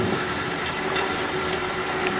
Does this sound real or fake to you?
real